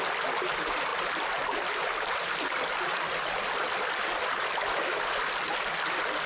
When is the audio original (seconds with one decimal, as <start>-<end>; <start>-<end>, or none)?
0.0-6.3